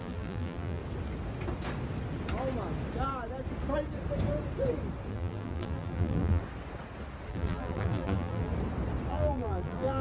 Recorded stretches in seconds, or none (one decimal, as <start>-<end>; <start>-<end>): 0.8-5.1; 6.4-7.3; 8.5-9.1